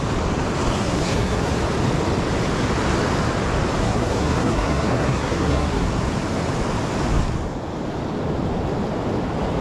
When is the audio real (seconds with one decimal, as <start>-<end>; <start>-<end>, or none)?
0.0-0.8; 1.5-3.8; 5.9-9.6